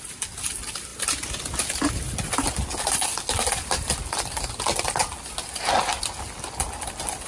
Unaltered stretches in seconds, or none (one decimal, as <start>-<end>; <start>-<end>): 0.0-7.3